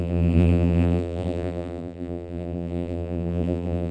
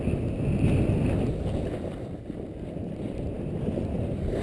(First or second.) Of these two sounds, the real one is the second